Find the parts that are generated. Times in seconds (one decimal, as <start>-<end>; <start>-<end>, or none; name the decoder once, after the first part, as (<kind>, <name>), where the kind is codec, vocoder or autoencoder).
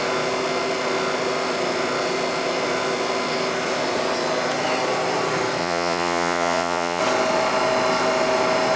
5.6-7.0 (vocoder, Vocos)